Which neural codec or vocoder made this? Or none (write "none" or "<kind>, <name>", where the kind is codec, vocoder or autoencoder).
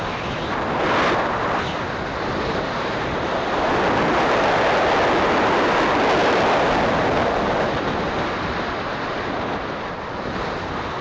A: none